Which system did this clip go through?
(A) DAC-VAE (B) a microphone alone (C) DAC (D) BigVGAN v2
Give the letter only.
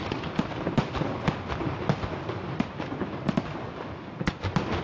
B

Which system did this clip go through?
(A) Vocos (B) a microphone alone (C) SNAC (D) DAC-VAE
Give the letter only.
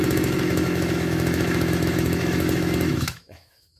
D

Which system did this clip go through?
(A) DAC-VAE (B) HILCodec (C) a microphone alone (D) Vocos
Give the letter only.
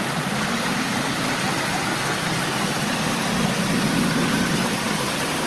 C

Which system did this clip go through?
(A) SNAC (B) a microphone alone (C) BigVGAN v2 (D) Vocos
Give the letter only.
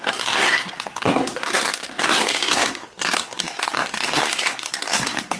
A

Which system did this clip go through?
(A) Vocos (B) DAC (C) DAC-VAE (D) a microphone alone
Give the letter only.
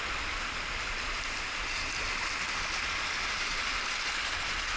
D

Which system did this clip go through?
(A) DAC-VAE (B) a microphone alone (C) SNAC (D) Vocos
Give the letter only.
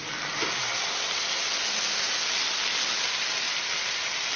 B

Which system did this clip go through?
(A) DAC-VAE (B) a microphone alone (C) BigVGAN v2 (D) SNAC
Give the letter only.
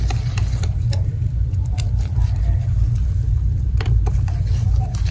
C